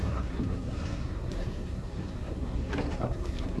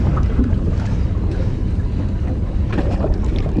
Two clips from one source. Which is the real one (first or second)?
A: second